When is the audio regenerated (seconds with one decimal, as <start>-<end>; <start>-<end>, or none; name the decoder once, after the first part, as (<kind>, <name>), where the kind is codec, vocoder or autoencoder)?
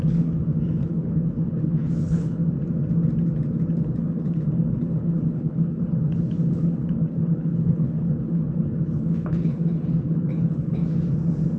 0.0-2.4 (codec, HILCodec); 3.7-10.8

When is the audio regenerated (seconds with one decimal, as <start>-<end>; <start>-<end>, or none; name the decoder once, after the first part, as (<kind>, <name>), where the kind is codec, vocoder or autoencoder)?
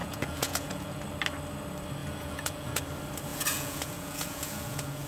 0.0-1.0 (vocoder, Vocos); 2.0-2.8; 3.3-5.1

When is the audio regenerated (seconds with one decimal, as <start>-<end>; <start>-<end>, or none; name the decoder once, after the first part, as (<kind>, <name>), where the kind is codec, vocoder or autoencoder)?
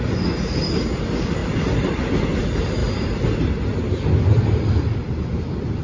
1.4-2.1 (vocoder, BigVGAN v2); 2.8-3.5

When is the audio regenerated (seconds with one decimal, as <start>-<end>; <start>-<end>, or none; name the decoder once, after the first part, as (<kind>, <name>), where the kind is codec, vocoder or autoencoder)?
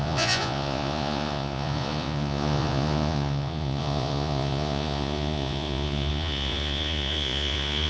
0.0-7.9 (vocoder, Vocos)